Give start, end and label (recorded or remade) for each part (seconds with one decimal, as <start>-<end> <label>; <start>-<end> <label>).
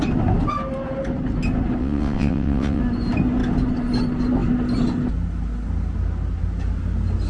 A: 0.0-1.8 recorded; 1.8-2.8 remade; 2.8-7.3 recorded